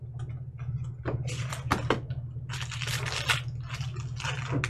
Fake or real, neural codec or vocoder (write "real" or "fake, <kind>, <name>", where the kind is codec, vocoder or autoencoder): real